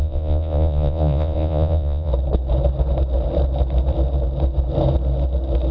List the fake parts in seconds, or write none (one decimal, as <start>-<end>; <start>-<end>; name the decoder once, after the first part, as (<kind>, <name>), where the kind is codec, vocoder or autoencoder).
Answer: 0.0-2.1 (vocoder, Vocos)